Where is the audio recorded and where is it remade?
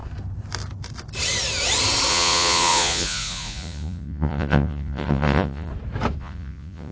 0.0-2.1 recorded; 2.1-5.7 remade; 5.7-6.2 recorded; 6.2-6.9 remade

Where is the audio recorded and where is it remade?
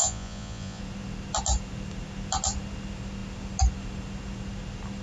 0.0-0.8 remade; 0.8-5.0 recorded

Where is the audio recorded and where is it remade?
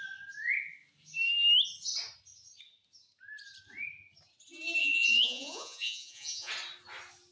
0.0-4.8 recorded; 4.8-6.5 remade; 6.5-7.3 recorded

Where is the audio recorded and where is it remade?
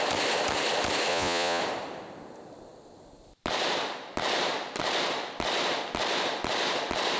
0.0-1.1 recorded; 1.1-1.6 remade; 1.6-7.2 recorded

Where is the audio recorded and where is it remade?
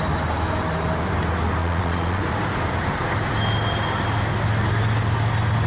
0.0-1.6 recorded; 1.6-2.2 remade; 2.2-5.7 recorded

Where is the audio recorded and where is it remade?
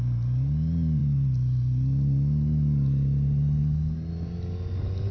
0.0-5.1 recorded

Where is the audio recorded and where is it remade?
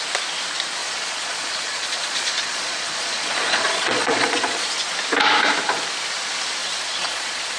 0.0-0.8 recorded; 0.8-4.7 remade; 4.7-6.6 recorded; 6.6-7.6 remade